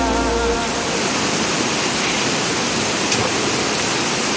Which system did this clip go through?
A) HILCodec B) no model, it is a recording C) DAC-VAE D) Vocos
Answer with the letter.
B